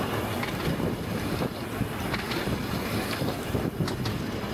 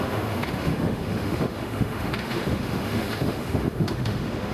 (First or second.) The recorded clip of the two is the first